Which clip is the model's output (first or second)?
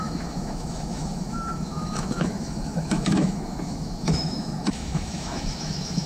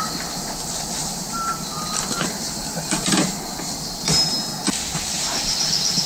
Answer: first